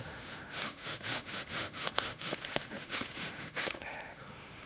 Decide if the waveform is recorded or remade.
remade